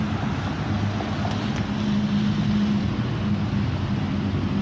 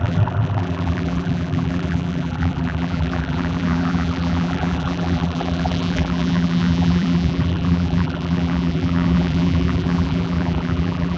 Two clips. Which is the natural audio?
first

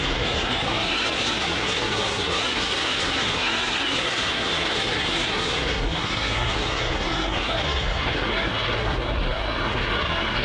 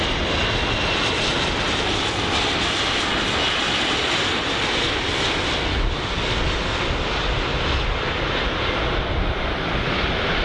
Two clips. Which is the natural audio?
second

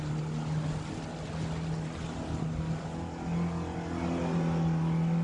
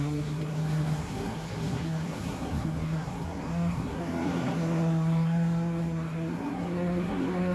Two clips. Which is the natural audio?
first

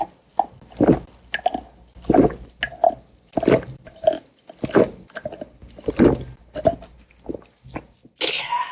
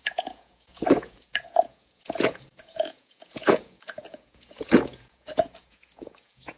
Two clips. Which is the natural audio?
first